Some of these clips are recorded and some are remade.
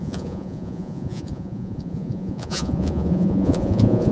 remade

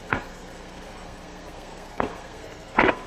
remade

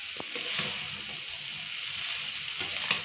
recorded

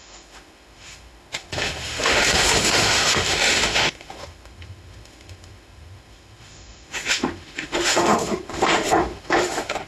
remade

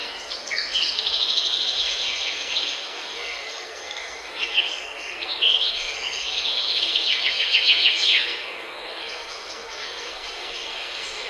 remade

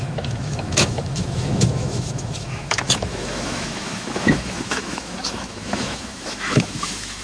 remade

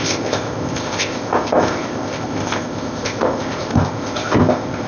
remade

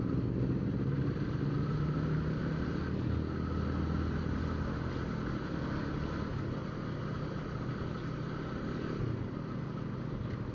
remade